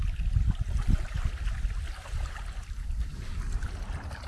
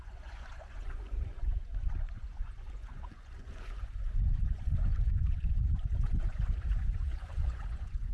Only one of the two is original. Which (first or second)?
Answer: first